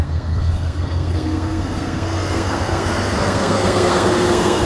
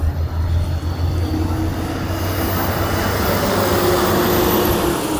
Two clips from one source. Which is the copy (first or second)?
first